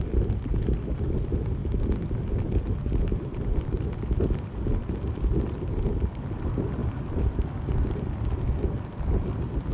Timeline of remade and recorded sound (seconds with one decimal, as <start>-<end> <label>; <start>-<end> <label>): 0.0-9.7 recorded

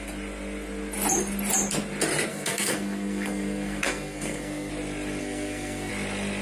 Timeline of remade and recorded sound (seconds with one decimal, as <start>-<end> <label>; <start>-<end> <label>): 0.0-2.3 recorded; 2.3-4.7 remade; 4.7-5.2 recorded; 5.2-5.9 remade; 5.9-6.4 recorded

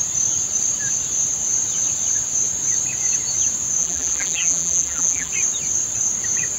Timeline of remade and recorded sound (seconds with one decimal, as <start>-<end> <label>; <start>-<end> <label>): 0.0-3.8 recorded; 3.8-5.3 remade; 5.3-6.6 recorded

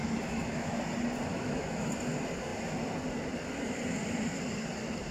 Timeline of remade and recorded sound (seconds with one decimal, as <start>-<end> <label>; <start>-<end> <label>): 0.0-0.8 remade; 0.8-1.3 recorded; 1.3-1.9 remade; 1.9-5.1 recorded